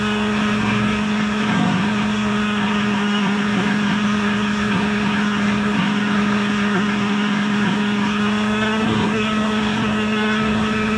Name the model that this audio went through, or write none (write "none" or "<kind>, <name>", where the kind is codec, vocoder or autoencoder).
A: codec, SNAC